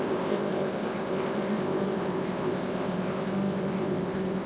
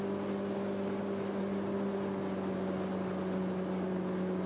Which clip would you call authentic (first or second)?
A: second